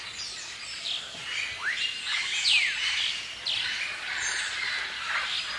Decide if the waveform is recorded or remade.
recorded